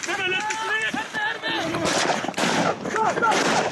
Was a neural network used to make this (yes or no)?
yes